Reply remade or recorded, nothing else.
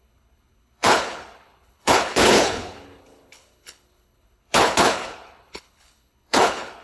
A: remade